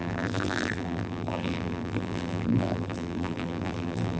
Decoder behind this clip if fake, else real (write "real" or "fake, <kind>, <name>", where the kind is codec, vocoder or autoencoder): fake, vocoder, BigVGAN v2